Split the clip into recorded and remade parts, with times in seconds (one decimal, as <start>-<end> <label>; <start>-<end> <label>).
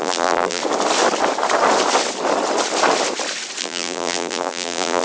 0.0-0.6 remade; 0.6-3.6 recorded; 3.6-5.0 remade